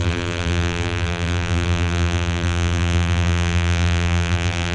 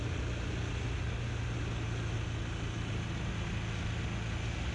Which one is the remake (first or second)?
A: first